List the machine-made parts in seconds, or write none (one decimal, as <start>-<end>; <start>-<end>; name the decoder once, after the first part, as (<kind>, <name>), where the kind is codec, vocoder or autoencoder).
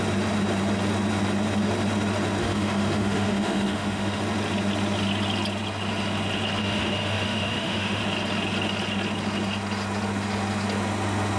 2.4-4.2 (autoencoder, DAC-VAE); 6.6-8.0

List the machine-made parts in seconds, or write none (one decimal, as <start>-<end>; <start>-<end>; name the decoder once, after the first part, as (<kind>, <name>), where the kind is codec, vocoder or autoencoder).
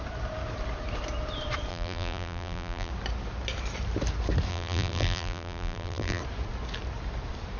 1.7-2.9 (vocoder, BigVGAN v2); 4.5-6.2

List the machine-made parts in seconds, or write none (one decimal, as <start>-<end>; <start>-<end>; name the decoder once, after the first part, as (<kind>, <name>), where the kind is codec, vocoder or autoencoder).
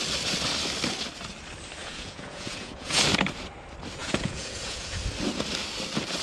1.8-3.0 (vocoder, Vocos); 4.0-5.0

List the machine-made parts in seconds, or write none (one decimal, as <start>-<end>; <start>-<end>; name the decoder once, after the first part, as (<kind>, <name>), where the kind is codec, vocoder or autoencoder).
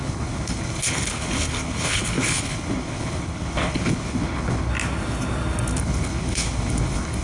0.0-4.7 (codec, HILCodec); 5.8-7.2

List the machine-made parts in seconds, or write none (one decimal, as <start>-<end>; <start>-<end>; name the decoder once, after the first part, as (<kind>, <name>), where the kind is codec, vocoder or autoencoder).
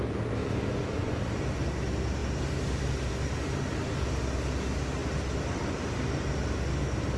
0.4-1.2 (vocoder, Vocos)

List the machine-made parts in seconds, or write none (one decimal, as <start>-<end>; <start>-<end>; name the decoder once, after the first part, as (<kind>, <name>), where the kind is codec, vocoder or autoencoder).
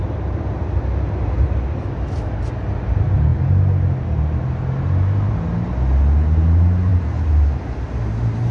none